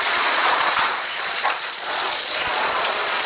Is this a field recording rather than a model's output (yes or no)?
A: no